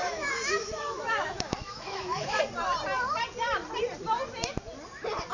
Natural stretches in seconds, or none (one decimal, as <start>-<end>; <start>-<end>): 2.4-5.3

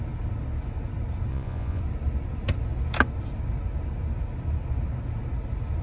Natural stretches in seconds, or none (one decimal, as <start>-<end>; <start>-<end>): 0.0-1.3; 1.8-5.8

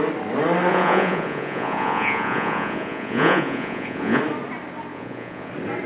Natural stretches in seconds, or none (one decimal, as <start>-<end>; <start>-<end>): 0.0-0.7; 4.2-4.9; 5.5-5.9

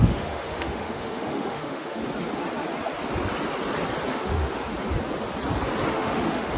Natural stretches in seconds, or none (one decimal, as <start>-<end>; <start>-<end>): 2.0-4.1; 4.6-5.9

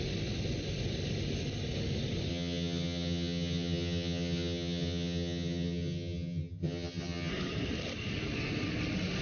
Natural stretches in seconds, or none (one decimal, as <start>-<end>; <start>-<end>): 0.0-2.3; 7.3-9.2

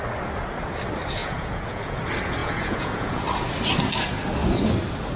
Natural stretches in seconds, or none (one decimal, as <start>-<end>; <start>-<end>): 0.0-1.2; 2.0-2.4; 3.2-5.2

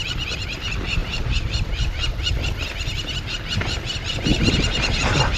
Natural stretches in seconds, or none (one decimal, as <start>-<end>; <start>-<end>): 0.0-1.0; 1.8-4.3